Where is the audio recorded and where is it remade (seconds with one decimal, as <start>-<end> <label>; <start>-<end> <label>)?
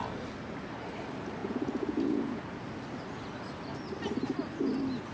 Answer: 0.0-1.4 recorded; 1.4-2.4 remade; 2.4-5.1 recorded